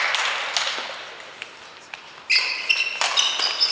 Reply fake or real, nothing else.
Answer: real